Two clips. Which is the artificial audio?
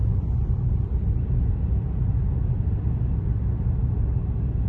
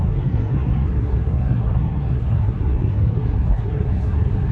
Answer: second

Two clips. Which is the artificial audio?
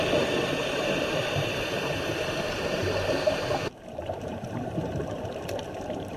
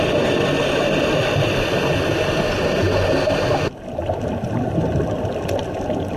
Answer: first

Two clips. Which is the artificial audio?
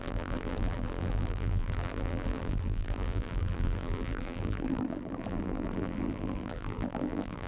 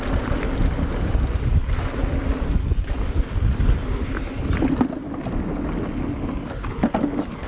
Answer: first